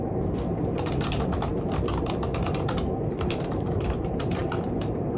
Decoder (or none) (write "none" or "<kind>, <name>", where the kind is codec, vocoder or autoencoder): vocoder, BigVGAN v2